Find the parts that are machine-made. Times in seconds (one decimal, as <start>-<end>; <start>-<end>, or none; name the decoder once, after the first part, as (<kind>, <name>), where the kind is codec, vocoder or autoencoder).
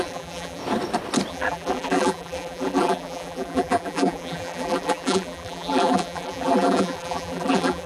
0.0-0.6 (vocoder, BigVGAN v2); 1.3-7.9